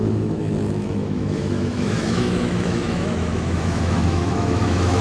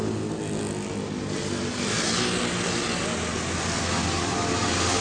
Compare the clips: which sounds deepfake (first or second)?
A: first